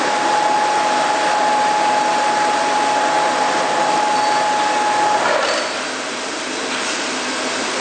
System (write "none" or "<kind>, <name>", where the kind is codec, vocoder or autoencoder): none